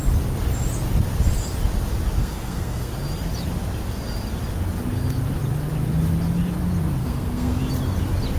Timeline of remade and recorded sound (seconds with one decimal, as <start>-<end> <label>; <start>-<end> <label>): 0.0-2.2 recorded; 2.2-2.9 remade; 2.9-7.0 recorded; 7.0-7.6 remade; 7.6-8.4 recorded